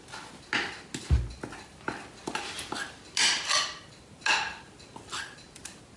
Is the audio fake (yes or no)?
no